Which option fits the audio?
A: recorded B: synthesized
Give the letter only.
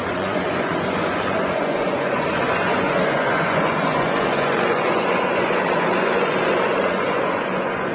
B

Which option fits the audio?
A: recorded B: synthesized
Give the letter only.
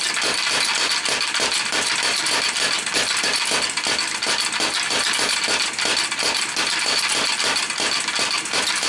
A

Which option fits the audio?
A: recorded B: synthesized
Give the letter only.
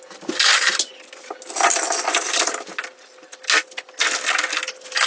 A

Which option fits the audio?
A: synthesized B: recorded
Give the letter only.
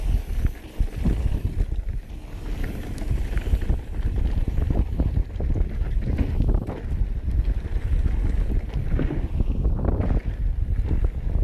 B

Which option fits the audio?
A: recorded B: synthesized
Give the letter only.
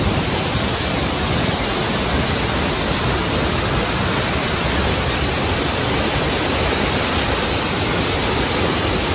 A